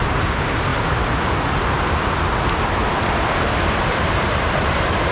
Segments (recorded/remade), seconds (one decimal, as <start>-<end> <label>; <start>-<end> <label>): 0.0-0.7 remade; 0.7-3.8 recorded; 3.8-5.1 remade